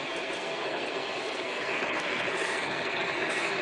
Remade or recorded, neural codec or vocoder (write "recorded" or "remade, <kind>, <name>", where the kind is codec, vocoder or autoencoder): remade, codec, SNAC